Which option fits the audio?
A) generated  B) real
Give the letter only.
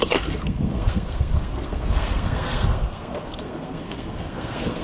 A